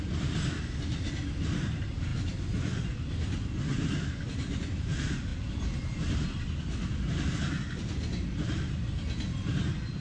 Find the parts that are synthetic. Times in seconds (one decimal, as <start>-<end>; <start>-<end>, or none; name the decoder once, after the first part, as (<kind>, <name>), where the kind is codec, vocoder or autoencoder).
none